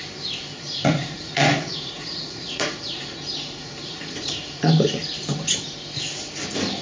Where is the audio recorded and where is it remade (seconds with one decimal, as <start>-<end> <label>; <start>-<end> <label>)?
0.0-0.5 recorded; 0.5-4.6 remade; 4.6-6.8 recorded